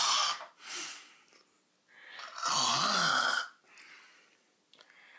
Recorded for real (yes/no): yes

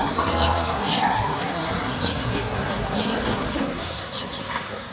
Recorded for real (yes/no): no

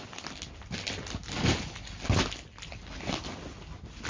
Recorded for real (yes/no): yes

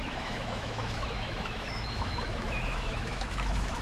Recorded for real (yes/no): no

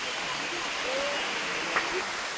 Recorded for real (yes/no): yes